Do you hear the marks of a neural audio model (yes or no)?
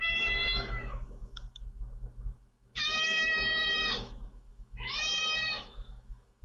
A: yes